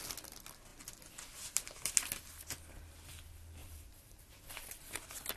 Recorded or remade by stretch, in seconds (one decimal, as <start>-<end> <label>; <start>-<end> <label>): 0.0-3.6 recorded; 3.6-4.4 remade; 4.4-5.4 recorded

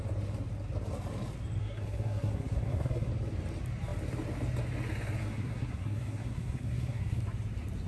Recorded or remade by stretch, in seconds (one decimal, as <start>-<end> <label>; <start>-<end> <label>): 0.0-1.6 recorded; 1.6-3.1 remade; 3.1-5.2 recorded; 5.2-7.2 remade; 7.2-7.9 recorded

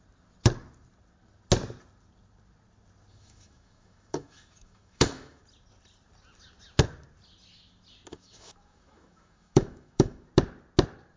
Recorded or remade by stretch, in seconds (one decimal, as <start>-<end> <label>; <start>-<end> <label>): 0.0-3.1 recorded; 3.1-5.4 remade; 5.4-8.1 recorded; 8.1-10.3 remade; 10.3-11.2 recorded

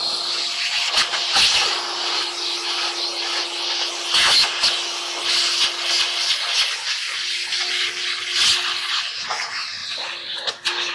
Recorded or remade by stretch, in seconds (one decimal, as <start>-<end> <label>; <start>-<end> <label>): 0.0-10.9 recorded

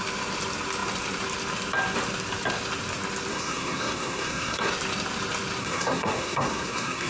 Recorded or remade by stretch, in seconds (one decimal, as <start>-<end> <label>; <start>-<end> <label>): 0.0-3.3 recorded; 3.3-4.7 remade; 4.7-5.6 recorded; 5.6-7.1 remade

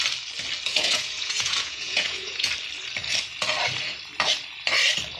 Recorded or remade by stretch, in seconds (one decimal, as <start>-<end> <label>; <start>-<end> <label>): 0.0-0.7 recorded; 0.7-2.5 remade; 2.5-5.2 recorded

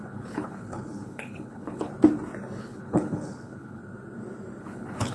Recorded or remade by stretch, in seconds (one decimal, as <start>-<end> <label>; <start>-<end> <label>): 0.0-1.9 remade; 1.9-2.6 recorded; 2.6-3.8 remade; 3.8-4.6 recorded; 4.6-5.1 remade

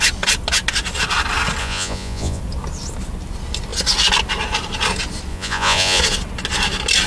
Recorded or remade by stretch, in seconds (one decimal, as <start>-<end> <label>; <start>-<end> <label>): 0.0-1.6 recorded; 1.6-2.4 remade; 2.4-5.3 recorded; 5.3-6.0 remade; 6.0-7.1 recorded